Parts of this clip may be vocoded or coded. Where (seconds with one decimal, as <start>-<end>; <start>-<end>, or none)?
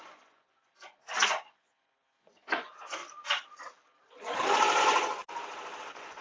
0.0-3.0; 4.8-5.2; 5.8-6.2